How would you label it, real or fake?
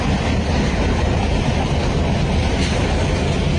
real